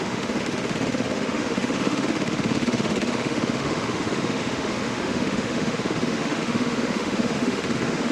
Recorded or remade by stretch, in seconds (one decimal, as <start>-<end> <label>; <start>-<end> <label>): 0.0-8.1 remade